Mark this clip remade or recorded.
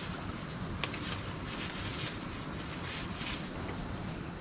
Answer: recorded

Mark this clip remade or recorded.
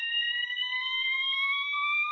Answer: remade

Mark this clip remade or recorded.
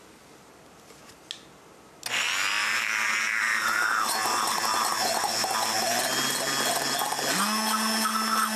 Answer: recorded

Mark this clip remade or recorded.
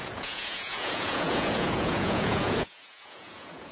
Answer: remade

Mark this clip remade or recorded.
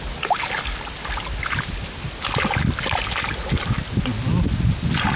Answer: recorded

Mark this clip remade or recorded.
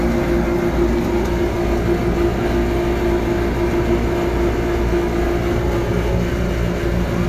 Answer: recorded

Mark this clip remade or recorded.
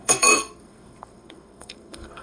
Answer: remade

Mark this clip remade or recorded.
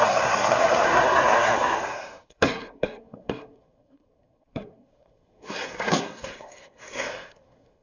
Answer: remade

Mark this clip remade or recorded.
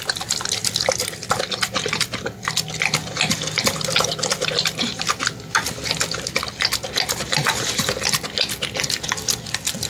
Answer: recorded